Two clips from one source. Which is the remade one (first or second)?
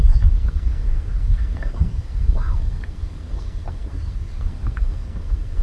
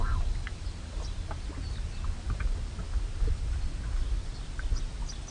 first